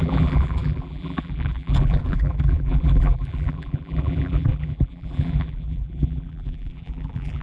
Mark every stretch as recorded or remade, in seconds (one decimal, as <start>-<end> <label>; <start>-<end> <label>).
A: 0.0-7.4 remade